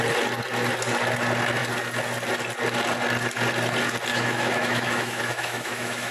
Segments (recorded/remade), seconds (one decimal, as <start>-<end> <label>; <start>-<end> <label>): 0.0-4.1 recorded; 4.1-6.1 remade